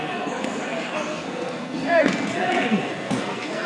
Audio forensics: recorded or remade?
remade